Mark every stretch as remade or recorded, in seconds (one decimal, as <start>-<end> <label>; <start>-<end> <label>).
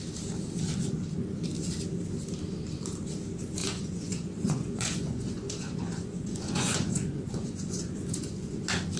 0.0-3.6 recorded; 3.6-8.6 remade; 8.6-9.0 recorded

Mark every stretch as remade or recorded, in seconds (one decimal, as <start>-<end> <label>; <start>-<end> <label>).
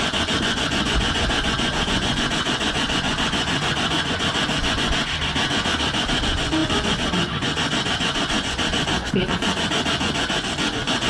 0.0-11.1 remade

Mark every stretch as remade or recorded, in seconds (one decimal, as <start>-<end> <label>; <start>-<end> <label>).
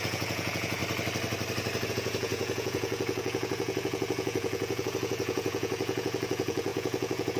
0.0-0.8 remade; 0.8-1.9 recorded; 1.9-7.4 remade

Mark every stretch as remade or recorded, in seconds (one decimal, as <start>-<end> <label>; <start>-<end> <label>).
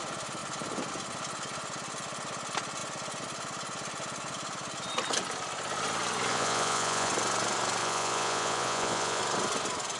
0.0-6.3 recorded; 6.3-7.1 remade; 7.1-7.8 recorded; 7.8-9.2 remade; 9.2-10.0 recorded